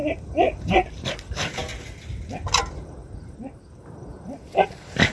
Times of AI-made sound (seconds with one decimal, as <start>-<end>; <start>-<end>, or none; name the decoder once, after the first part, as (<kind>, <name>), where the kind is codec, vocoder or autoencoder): 0.6-1.7 (vocoder, BigVGAN v2); 2.6-4.1; 4.6-5.1